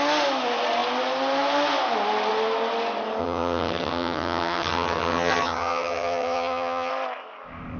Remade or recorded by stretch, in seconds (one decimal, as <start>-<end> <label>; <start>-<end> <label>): 0.0-3.2 recorded; 3.2-6.9 remade; 6.9-7.8 recorded